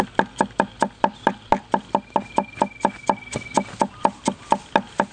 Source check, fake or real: real